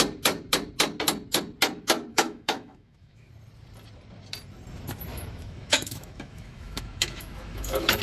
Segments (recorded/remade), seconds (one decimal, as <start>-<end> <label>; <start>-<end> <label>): 0.0-2.1 recorded; 2.1-3.3 remade; 3.3-5.1 recorded; 5.1-8.0 remade